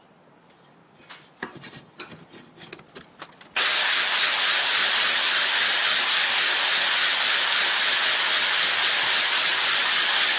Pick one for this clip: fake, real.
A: real